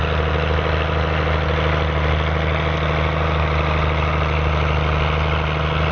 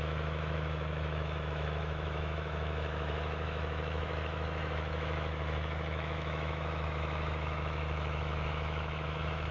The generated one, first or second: second